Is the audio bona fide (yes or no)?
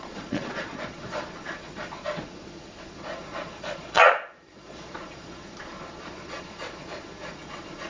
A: no